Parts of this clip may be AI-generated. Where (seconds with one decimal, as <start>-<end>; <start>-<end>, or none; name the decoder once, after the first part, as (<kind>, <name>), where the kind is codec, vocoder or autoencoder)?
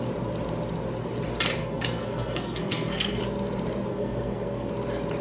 1.6-3.2 (codec, SNAC); 3.9-4.7